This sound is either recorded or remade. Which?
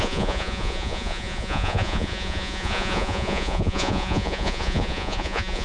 remade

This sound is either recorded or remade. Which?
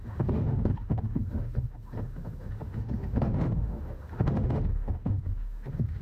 remade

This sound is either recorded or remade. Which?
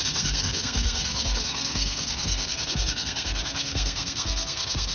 remade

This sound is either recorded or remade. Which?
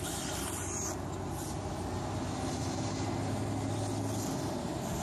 recorded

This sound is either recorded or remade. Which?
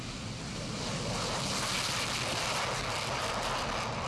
recorded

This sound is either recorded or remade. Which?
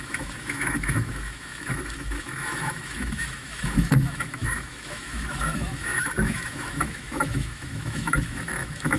remade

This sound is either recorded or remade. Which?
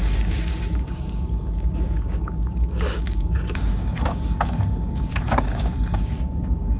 remade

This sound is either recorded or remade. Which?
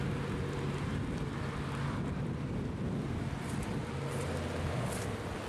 recorded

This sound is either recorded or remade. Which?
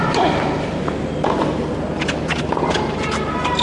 recorded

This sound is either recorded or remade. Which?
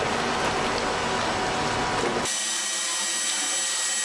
recorded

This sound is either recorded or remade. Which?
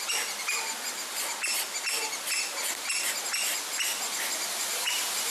recorded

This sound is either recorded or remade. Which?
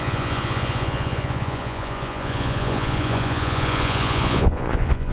remade